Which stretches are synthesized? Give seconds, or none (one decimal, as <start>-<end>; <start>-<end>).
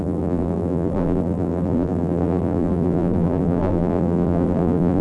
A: 0.0-5.0